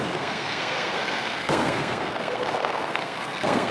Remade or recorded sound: remade